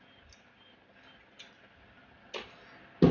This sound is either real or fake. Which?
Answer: real